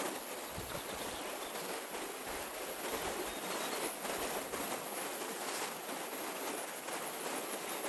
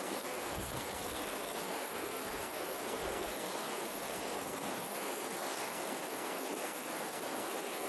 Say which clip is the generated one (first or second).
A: second